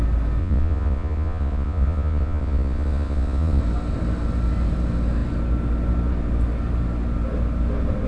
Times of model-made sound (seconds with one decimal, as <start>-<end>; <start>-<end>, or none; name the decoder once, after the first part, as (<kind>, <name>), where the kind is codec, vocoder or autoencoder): 0.4-3.6 (vocoder, Vocos)